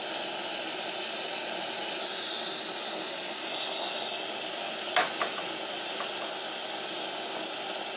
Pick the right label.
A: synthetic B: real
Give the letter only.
B